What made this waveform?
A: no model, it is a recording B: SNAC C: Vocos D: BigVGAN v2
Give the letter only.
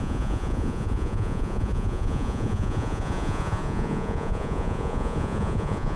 C